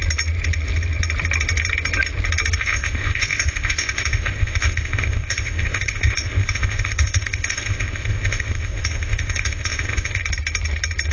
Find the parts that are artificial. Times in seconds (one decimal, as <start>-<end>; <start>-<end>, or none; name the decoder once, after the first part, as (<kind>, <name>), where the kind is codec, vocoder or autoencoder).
2.6-10.2 (codec, ZipCodec)